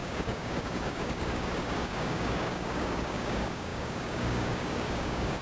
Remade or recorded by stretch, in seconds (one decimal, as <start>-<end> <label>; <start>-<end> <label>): 0.0-5.4 remade